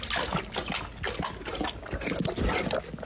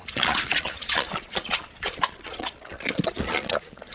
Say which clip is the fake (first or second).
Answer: second